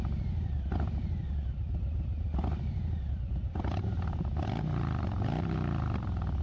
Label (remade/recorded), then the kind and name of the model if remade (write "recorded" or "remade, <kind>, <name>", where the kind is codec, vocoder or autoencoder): remade, vocoder, BigVGAN v2